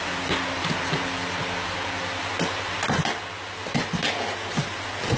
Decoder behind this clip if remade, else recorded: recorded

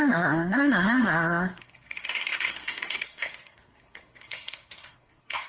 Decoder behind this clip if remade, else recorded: remade, codec, SNAC